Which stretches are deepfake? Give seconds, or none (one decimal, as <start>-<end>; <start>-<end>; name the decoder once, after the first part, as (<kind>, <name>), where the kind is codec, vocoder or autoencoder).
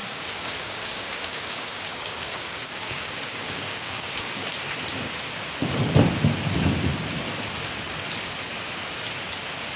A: 0.0-4.5 (codec, DAC)